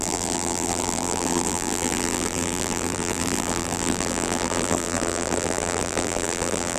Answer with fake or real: fake